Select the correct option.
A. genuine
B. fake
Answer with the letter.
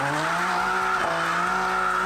A